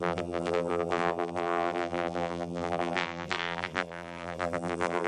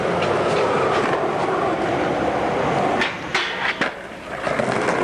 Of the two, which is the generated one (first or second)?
first